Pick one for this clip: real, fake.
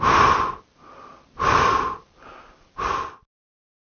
real